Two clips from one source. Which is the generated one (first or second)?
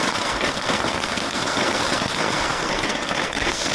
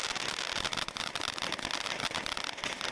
first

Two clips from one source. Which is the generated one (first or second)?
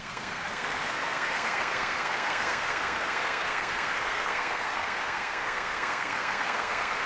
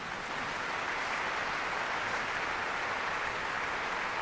first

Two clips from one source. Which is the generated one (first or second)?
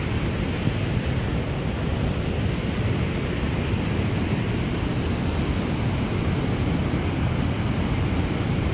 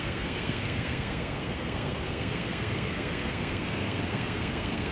second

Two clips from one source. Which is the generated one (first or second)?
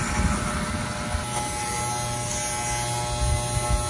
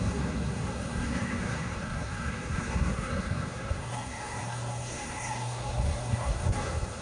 second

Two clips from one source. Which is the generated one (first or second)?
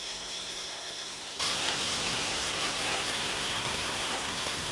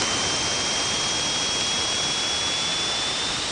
first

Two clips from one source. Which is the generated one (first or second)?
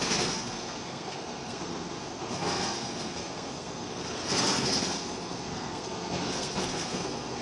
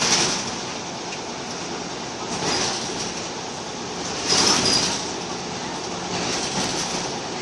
first